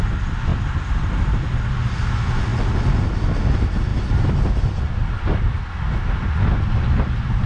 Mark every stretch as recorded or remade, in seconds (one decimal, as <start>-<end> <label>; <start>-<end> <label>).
0.0-7.5 recorded

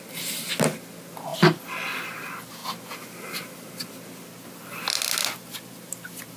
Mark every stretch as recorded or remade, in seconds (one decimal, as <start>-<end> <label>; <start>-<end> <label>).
0.0-6.4 recorded

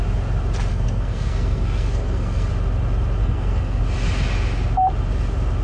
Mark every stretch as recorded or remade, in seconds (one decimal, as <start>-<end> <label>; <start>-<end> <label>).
0.0-0.7 recorded; 0.7-2.5 remade; 2.5-3.2 recorded; 3.2-3.8 remade; 3.8-5.6 recorded

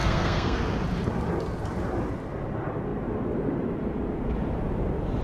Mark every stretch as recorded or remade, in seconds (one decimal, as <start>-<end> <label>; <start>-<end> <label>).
0.0-0.6 remade; 0.6-5.2 recorded

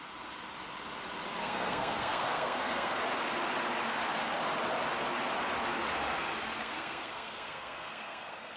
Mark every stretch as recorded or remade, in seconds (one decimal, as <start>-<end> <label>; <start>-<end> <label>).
0.0-1.4 recorded; 1.4-3.0 remade; 3.0-6.6 recorded; 6.6-8.6 remade

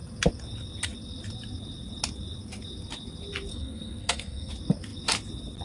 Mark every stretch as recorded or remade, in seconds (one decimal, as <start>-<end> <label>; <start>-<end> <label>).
0.0-3.5 recorded; 3.5-4.5 remade; 4.5-5.6 recorded

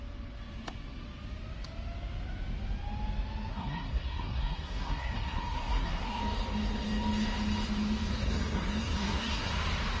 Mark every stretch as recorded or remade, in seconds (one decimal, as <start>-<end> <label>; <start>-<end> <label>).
0.0-3.5 recorded; 3.5-6.2 remade; 6.2-8.1 recorded; 8.1-9.5 remade; 9.5-10.0 recorded